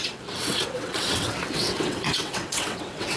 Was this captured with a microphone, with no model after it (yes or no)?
no